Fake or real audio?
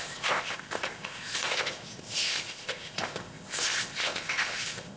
fake